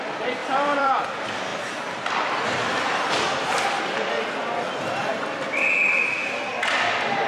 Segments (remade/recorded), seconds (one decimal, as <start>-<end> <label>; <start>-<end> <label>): 0.0-0.4 recorded; 0.4-1.0 remade; 1.0-1.5 recorded; 1.5-4.1 remade; 4.1-7.3 recorded